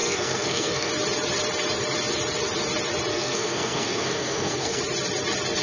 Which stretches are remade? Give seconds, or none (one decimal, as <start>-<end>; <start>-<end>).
0.0-0.9; 3.1-4.8